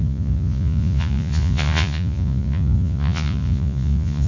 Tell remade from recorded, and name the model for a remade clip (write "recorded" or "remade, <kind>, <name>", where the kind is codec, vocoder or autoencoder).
remade, vocoder, Vocos